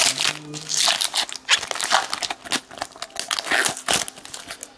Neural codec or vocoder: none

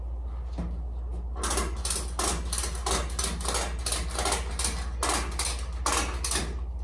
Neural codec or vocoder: none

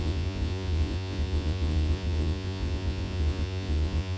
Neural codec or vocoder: vocoder, Vocos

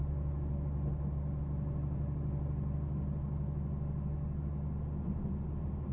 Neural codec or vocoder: none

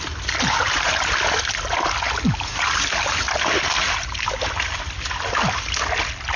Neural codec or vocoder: none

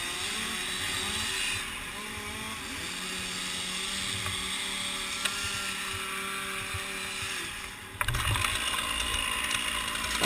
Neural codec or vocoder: none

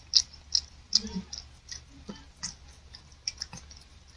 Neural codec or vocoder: none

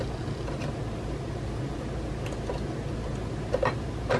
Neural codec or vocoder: none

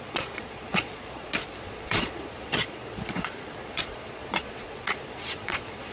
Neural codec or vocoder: vocoder, Vocos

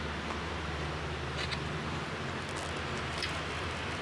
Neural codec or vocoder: none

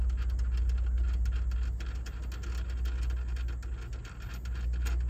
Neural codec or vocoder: none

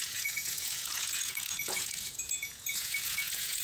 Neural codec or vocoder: vocoder, Vocos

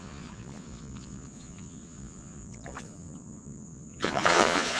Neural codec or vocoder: vocoder, Vocos